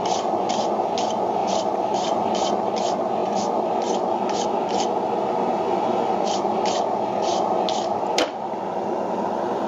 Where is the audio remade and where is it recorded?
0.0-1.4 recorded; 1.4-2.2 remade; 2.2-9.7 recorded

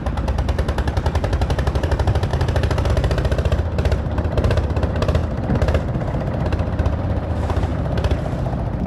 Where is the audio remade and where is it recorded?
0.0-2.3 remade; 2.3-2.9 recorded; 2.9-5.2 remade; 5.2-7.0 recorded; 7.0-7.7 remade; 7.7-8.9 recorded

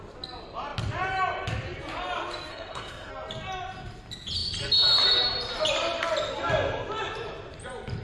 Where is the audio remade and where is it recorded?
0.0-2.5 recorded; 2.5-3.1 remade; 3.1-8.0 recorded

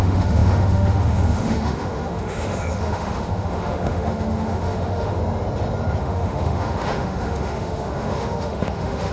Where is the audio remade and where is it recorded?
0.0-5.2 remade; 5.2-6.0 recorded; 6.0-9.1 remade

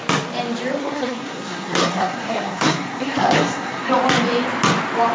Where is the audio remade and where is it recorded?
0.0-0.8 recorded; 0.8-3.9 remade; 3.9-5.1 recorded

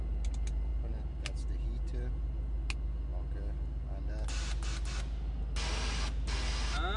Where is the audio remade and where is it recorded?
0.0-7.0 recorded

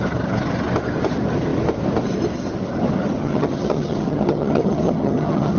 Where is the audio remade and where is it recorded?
0.0-3.2 recorded; 3.2-5.6 remade